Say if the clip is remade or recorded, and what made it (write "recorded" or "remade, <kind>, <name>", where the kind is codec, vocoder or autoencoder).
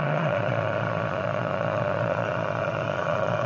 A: remade, vocoder, Vocos